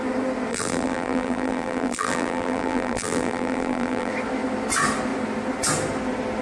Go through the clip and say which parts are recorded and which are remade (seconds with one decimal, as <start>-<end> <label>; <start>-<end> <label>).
0.0-0.5 recorded; 0.5-4.1 remade; 4.1-6.4 recorded